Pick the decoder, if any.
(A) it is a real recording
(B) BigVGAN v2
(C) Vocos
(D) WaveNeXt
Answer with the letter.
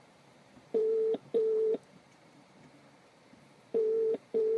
B